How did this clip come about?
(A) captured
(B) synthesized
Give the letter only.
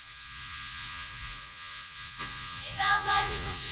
B